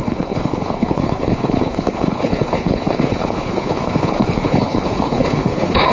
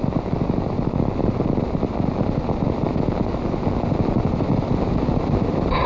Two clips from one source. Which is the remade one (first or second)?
first